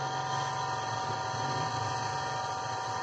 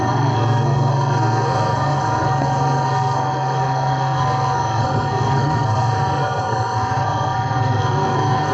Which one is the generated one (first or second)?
second